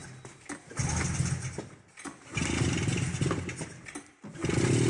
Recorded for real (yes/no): yes